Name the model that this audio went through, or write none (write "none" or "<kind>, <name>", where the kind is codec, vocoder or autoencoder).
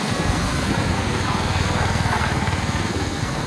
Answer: codec, SNAC